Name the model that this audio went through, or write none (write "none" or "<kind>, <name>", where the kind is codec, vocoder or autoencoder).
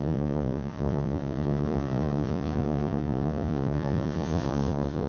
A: vocoder, Vocos